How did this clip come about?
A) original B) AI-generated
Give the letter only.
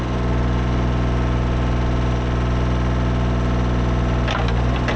A